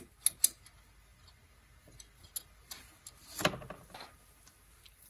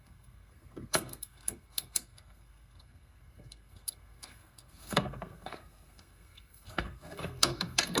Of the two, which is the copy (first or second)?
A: second